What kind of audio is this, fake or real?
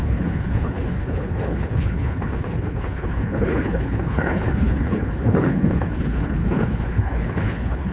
fake